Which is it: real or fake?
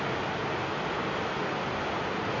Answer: real